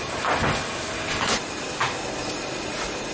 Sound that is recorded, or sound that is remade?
recorded